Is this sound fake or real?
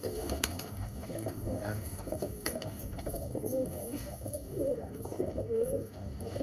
fake